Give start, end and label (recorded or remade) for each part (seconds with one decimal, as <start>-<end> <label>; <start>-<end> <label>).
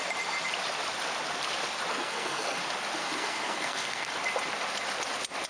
0.0-1.9 recorded; 1.9-2.6 remade; 2.6-3.0 recorded; 3.0-4.1 remade; 4.1-5.5 recorded